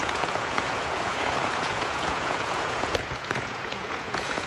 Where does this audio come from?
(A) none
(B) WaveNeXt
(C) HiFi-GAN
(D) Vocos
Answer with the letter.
D